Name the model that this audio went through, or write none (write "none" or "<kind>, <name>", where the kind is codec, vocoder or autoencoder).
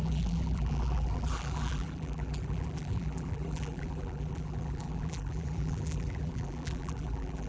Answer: vocoder, BigVGAN v2